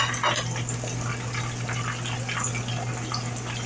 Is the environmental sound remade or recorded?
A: recorded